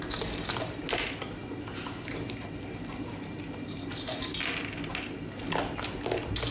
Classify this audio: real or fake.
real